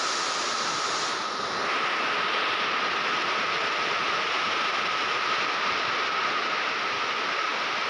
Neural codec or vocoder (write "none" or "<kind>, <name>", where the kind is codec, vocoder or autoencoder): none